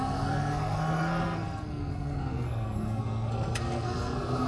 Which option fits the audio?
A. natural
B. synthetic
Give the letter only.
B